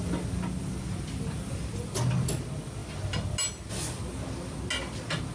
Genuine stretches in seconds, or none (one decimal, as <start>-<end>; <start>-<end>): 0.0-5.3